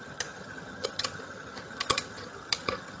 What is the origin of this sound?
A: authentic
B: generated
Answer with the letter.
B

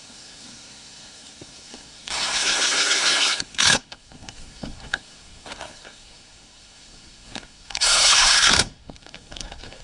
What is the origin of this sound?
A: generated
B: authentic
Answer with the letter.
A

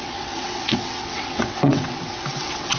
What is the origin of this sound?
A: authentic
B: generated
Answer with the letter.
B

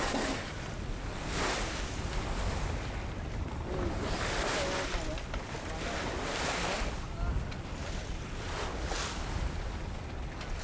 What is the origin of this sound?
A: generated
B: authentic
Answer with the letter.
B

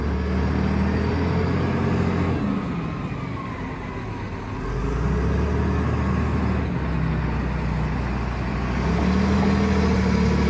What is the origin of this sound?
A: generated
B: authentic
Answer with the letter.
B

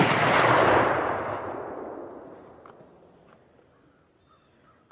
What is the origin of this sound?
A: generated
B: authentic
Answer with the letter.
B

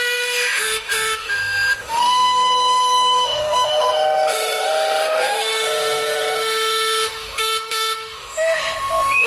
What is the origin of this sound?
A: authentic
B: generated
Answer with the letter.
B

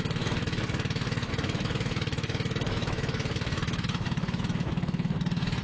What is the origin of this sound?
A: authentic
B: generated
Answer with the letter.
B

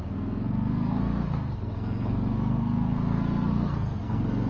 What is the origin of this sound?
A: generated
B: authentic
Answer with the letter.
A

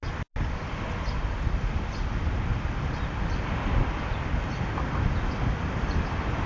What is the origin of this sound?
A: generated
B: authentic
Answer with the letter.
B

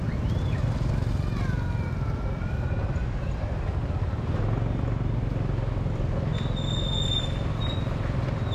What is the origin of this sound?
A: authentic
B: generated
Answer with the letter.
A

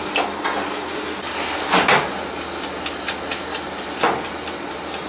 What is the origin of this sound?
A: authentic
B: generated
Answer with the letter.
A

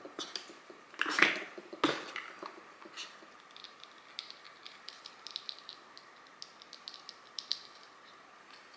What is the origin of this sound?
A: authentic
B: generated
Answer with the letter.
A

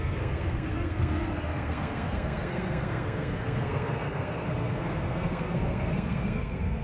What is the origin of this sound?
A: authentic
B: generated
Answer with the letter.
B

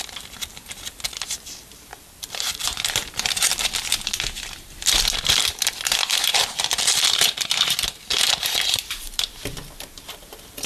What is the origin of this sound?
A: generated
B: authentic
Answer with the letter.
A